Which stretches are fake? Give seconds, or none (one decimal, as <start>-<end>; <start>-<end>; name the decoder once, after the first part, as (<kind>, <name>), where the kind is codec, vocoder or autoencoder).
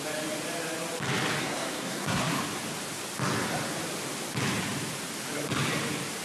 1.4-2.4 (codec, SNAC)